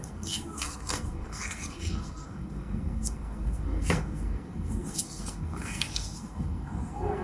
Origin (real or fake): fake